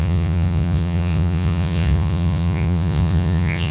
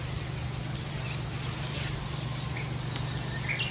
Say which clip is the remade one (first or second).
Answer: first